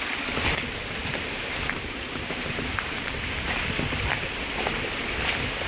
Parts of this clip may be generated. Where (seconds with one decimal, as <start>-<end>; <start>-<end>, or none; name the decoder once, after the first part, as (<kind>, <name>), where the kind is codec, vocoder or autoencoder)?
1.0-4.4 (vocoder, BigVGAN v2)